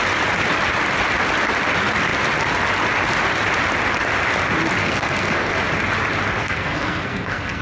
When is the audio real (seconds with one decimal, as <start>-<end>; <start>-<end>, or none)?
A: 0.0-4.8; 5.5-6.4